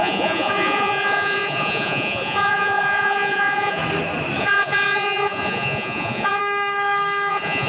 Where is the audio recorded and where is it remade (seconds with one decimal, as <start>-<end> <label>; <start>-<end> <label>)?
0.0-3.8 remade; 3.8-4.4 recorded; 4.4-6.4 remade; 6.4-7.3 recorded; 7.3-7.7 remade

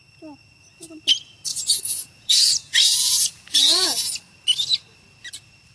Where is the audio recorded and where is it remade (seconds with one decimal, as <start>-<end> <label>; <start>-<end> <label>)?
0.0-1.5 recorded; 1.5-2.5 remade; 2.5-3.0 recorded; 3.0-4.1 remade; 4.1-5.7 recorded